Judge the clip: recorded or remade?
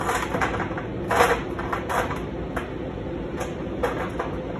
recorded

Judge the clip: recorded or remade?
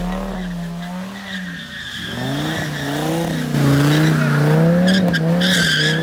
recorded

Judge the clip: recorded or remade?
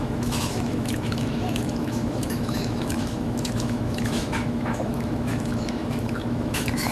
remade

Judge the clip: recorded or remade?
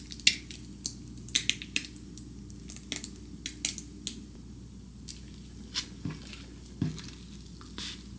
recorded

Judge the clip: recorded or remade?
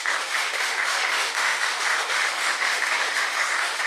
remade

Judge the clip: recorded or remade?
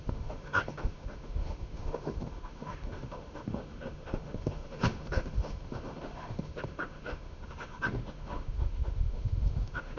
remade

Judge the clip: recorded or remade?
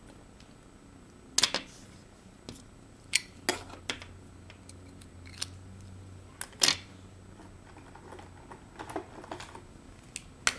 recorded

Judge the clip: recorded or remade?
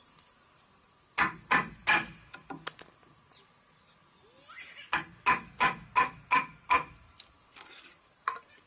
recorded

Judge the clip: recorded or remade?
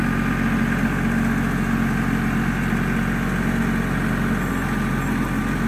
recorded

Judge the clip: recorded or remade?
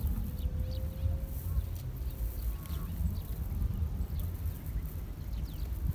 recorded